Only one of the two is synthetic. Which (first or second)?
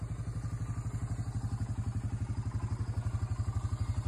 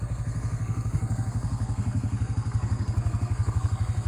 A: second